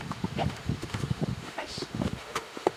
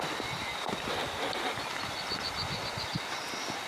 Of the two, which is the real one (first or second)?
second